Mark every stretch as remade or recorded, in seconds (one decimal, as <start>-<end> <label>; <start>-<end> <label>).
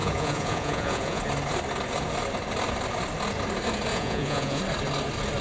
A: 0.0-1.2 remade; 1.2-3.9 recorded; 3.9-4.6 remade; 4.6-5.4 recorded